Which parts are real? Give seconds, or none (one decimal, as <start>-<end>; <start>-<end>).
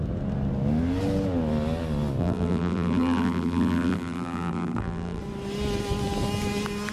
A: 0.0-2.2; 5.2-6.9